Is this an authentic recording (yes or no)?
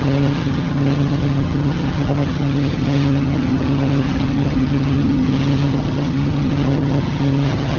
no